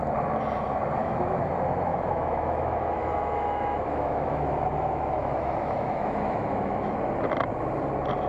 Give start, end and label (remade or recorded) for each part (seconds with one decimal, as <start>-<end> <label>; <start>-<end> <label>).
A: 0.0-1.0 recorded; 1.0-1.5 remade; 1.5-1.9 recorded; 1.9-6.9 remade; 6.9-8.3 recorded